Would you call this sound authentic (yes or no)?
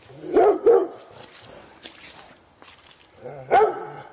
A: yes